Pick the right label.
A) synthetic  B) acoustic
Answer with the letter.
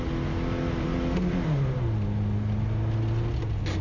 B